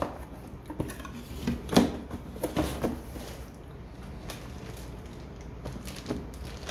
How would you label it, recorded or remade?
recorded